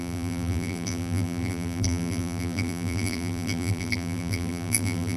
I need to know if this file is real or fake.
fake